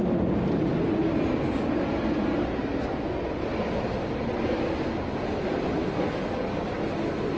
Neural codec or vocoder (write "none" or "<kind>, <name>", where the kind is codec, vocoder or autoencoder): none